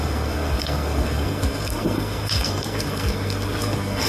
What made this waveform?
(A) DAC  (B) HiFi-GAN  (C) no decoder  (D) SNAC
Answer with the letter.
D